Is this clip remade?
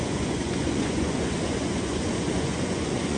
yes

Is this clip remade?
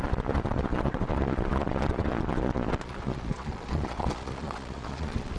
yes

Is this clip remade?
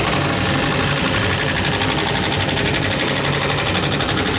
no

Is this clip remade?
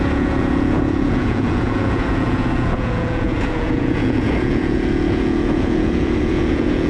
yes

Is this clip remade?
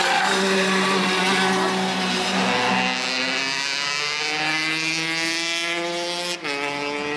no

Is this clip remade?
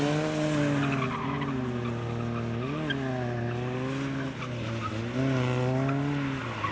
no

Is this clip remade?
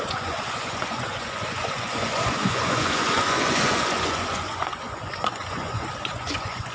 yes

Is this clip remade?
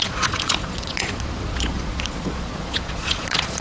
yes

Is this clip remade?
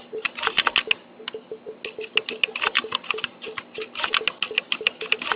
no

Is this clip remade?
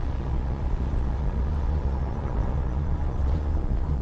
yes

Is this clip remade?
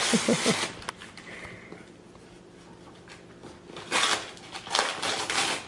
no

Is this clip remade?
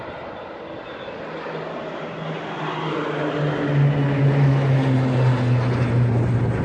no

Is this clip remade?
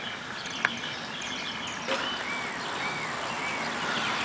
no